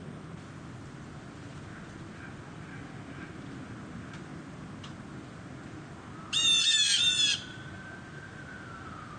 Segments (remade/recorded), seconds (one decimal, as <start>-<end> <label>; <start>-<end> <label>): 0.0-9.2 recorded